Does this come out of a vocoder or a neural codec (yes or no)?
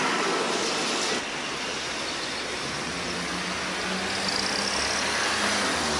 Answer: no